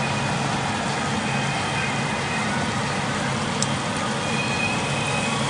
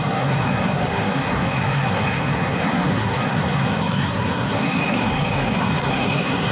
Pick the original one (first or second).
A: first